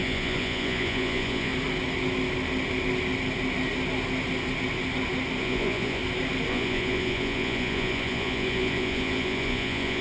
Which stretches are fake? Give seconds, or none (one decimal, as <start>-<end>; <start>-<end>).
0.0-1.5; 5.4-6.0; 6.5-10.0